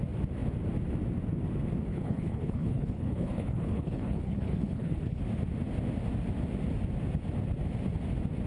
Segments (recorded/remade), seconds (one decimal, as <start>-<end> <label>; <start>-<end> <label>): 0.0-1.9 recorded; 1.9-5.2 remade; 5.2-8.5 recorded